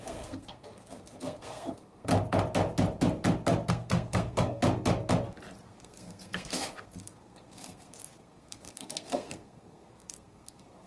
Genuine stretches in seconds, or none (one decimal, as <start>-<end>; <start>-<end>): 2.1-3.7; 4.6-5.7